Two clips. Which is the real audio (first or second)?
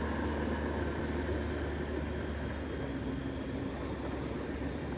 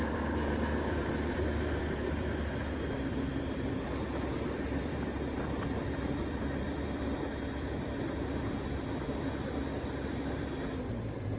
first